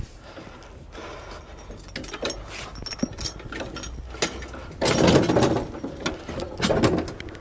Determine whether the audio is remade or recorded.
recorded